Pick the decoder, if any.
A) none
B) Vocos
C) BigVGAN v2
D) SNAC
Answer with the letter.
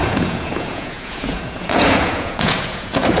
B